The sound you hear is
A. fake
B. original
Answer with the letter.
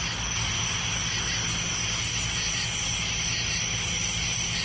B